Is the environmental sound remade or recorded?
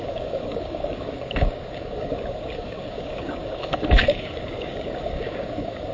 remade